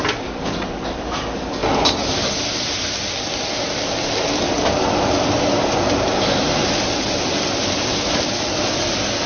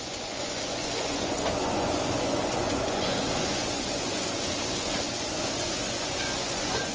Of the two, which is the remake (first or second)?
second